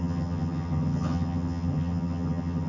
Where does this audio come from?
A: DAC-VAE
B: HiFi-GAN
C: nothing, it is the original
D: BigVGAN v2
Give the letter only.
B